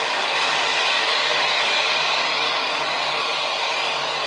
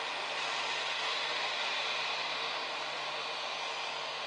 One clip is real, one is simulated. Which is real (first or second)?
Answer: second